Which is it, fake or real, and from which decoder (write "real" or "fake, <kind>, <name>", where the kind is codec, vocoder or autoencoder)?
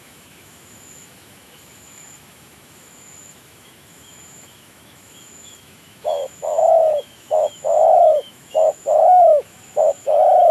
fake, autoencoder, DAC-VAE